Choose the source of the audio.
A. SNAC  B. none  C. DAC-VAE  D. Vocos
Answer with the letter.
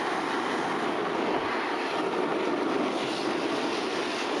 B